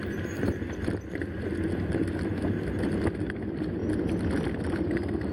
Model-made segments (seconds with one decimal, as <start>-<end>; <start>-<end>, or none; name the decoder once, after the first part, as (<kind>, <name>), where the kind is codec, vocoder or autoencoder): none